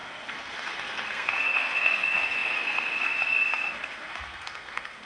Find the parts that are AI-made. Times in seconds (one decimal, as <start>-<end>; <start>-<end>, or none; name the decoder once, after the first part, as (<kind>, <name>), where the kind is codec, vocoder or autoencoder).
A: 0.0-5.1 (codec, SNAC)